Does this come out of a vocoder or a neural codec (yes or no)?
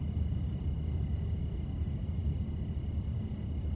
no